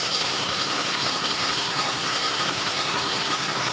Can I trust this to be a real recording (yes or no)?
no